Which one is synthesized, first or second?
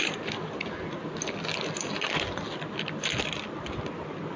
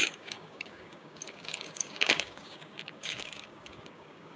second